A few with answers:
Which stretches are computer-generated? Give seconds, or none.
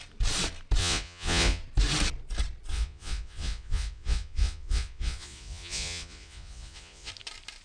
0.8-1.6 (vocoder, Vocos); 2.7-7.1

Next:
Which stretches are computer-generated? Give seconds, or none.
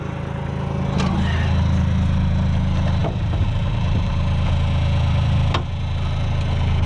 3.0-4.1 (vocoder, BigVGAN v2)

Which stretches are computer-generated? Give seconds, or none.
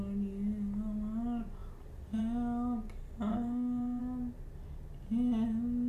3.3-4.0 (codec, SNAC)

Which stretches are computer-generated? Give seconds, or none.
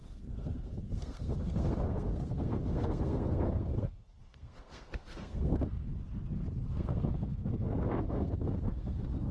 0.0-5.9 (codec, SNAC); 6.7-9.3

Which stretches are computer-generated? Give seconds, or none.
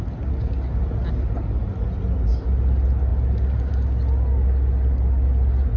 none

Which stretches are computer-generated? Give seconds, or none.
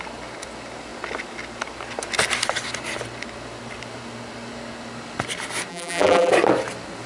5.7-6.3 (vocoder, BigVGAN v2)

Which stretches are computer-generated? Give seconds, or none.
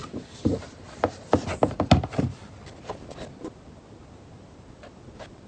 none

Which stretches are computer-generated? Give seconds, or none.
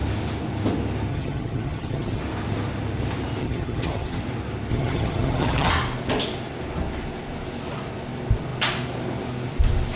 1.1-2.2 (vocoder, HiFi-GAN); 3.4-4.2; 4.7-5.7